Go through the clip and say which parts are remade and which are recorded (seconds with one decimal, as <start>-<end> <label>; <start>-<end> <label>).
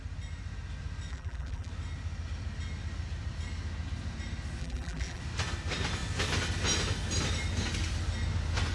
0.0-1.1 recorded; 1.1-1.7 remade; 1.7-4.6 recorded; 4.6-5.2 remade; 5.2-8.7 recorded